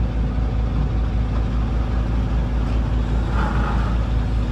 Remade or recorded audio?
recorded